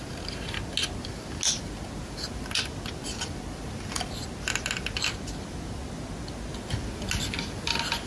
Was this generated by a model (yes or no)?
no